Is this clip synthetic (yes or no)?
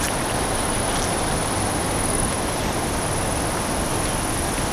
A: no